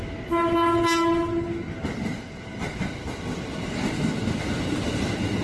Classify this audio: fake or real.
real